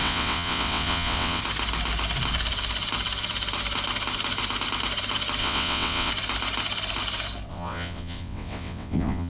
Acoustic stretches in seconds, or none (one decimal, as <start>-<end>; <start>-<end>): 1.4-5.4; 6.1-7.5